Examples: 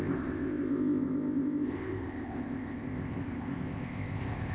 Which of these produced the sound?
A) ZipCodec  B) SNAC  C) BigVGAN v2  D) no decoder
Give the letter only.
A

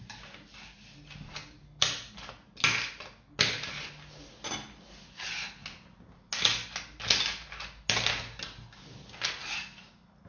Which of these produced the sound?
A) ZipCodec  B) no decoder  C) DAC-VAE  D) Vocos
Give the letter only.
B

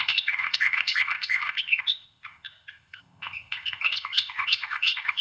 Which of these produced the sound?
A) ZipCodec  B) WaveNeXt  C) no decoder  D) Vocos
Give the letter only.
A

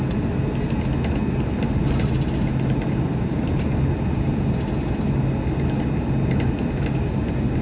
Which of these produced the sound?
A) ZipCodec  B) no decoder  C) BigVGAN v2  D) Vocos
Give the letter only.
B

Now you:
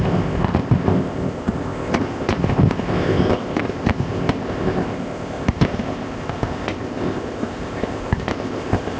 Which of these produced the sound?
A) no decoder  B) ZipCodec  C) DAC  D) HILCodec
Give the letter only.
B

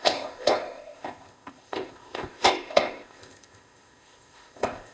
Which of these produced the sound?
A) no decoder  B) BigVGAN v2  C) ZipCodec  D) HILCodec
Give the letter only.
C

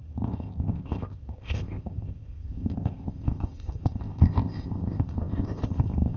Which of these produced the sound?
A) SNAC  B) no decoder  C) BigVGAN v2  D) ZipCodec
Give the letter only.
D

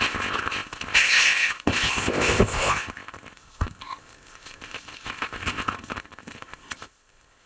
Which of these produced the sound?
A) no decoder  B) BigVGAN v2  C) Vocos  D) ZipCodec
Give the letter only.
D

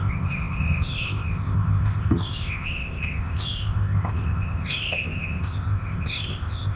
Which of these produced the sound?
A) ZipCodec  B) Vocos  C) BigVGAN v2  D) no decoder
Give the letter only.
A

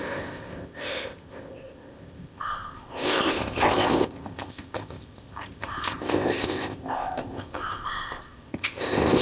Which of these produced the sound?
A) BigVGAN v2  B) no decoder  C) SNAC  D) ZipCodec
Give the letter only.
D